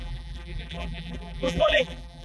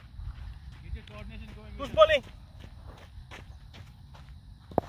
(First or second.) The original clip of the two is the second